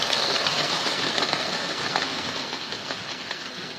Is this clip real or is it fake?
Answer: fake